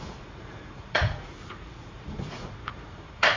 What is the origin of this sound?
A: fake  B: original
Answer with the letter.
A